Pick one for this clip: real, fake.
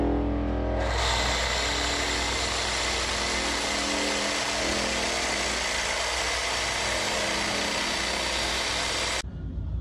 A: real